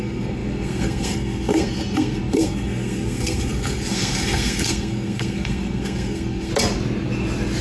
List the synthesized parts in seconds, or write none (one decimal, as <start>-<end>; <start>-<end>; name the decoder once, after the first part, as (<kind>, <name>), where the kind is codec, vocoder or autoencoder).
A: 0.0-6.5 (codec, SNAC)